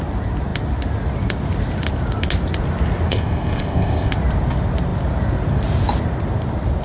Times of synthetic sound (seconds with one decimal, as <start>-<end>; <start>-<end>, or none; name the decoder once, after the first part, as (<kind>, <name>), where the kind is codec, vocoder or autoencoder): 3.1-4.1 (codec, ZipCodec)